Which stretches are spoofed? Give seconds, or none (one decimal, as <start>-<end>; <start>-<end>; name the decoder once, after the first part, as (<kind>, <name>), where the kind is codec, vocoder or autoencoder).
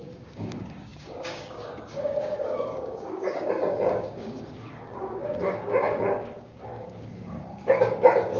0.0-8.4 (codec, DAC)